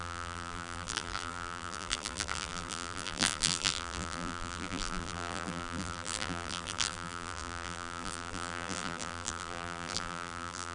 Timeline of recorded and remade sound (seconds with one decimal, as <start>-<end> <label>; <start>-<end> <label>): 0.0-10.7 remade